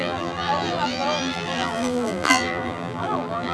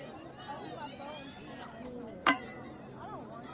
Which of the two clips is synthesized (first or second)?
first